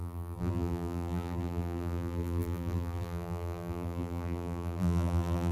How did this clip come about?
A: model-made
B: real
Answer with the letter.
A